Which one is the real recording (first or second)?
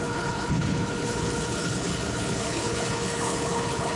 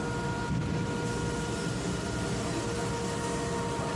second